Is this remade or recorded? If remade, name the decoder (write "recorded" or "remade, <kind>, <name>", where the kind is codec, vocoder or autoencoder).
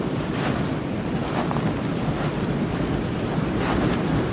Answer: remade, vocoder, BigVGAN v2